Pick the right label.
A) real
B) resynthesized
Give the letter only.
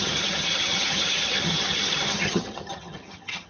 B